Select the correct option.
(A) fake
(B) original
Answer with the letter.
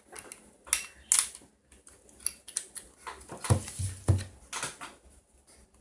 B